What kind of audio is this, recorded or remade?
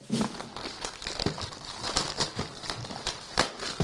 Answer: recorded